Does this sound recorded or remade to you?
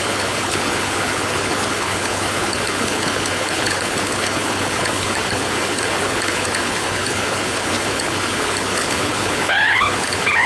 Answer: remade